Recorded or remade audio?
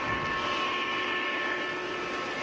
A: recorded